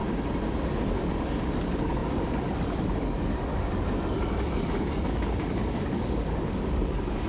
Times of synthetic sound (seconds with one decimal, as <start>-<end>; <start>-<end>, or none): 0.9-7.3